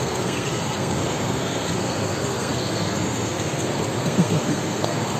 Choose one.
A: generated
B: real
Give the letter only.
A